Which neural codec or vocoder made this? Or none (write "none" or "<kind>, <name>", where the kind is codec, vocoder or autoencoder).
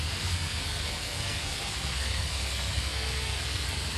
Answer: codec, SNAC